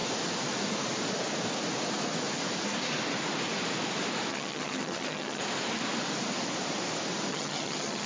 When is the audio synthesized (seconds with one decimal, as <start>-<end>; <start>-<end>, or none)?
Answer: 4.3-5.4; 7.3-8.1